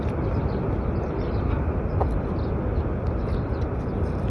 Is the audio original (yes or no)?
yes